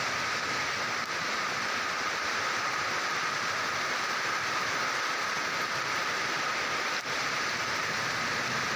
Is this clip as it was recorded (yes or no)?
no